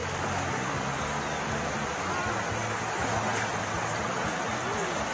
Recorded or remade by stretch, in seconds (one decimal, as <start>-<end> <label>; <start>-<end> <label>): 0.0-5.1 recorded